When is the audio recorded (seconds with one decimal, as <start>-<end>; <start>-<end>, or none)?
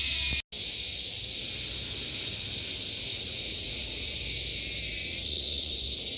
0.0-3.1; 4.2-4.9; 5.7-6.2